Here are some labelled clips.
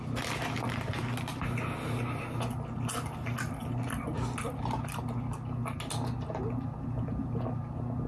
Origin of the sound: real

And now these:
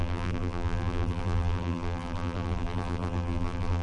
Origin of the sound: fake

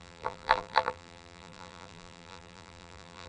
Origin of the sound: fake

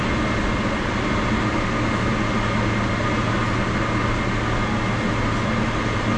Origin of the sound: real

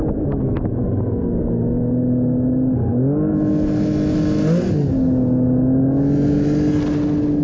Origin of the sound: real